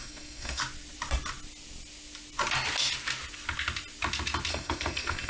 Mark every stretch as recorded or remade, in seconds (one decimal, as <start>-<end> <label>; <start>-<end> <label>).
0.0-0.6 remade; 0.6-4.5 recorded; 4.5-5.3 remade